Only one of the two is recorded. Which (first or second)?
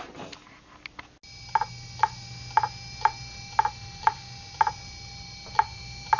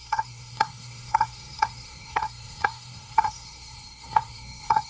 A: first